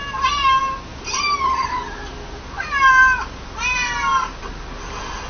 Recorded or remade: recorded